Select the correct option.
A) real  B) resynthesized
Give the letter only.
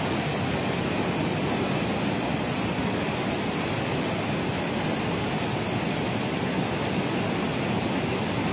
A